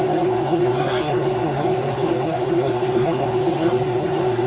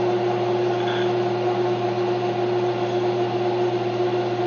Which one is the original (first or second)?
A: second